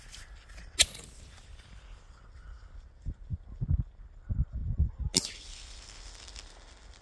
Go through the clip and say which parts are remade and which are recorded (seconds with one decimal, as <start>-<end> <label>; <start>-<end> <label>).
0.0-7.0 recorded

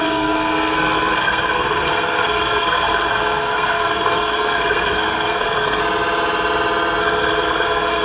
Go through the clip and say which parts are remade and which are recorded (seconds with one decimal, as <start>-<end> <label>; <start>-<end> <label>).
0.0-5.8 remade; 5.8-7.0 recorded; 7.0-8.0 remade

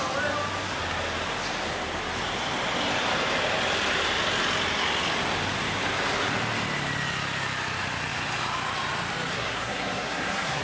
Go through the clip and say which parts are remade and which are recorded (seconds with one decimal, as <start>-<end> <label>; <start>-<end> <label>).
0.0-9.3 recorded; 9.3-10.6 remade

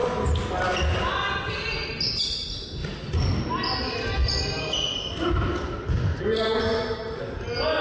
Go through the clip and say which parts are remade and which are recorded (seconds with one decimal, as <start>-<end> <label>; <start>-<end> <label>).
0.0-7.8 recorded

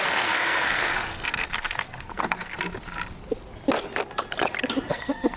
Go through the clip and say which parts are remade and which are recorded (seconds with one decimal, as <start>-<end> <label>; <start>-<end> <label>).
0.0-2.5 remade; 2.5-4.9 recorded; 4.9-5.4 remade